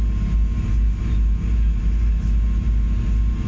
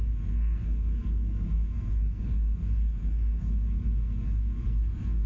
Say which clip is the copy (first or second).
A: second